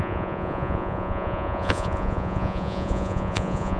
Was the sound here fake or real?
fake